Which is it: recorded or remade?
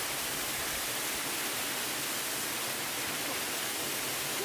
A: recorded